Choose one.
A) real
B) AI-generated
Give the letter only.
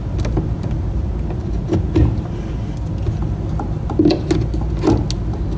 A